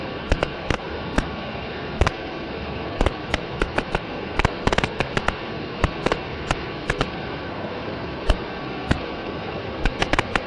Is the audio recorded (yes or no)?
no